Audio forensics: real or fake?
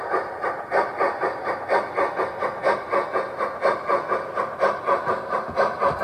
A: real